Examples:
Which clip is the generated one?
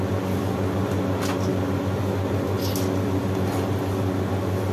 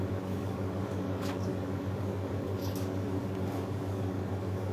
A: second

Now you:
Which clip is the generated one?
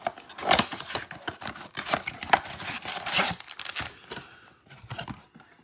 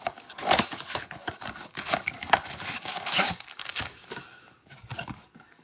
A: second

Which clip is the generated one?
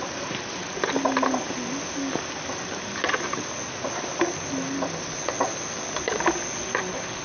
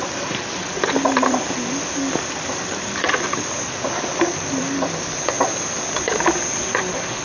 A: second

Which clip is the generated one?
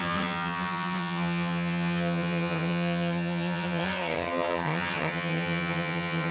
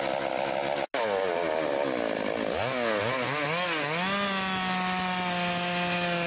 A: first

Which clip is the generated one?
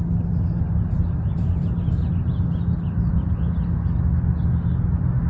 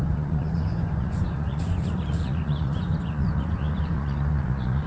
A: second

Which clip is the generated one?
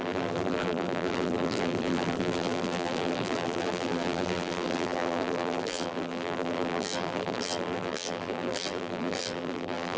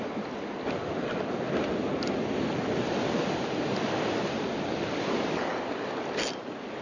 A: first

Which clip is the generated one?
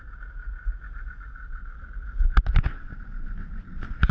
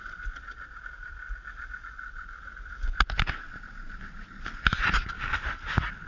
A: second